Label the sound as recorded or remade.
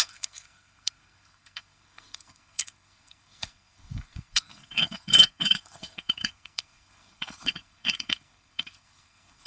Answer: remade